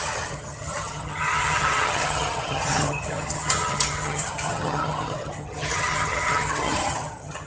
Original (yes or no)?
no